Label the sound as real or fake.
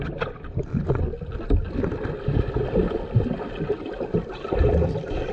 real